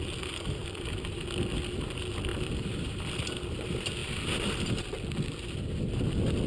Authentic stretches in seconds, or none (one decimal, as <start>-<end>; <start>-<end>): 0.0-2.3; 3.0-6.5